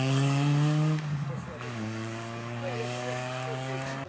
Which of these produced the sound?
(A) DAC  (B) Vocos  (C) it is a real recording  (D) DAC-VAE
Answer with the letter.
A